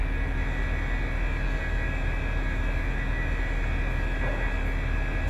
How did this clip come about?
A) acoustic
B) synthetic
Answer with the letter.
A